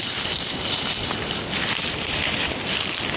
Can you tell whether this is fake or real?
real